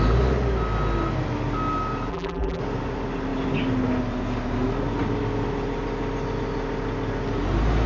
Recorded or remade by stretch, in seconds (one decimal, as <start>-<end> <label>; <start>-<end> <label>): 0.0-2.1 recorded; 2.1-2.6 remade; 2.6-7.9 recorded